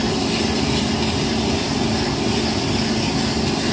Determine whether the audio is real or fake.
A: real